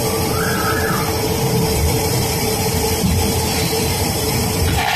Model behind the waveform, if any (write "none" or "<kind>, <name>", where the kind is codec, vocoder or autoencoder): vocoder, BigVGAN v2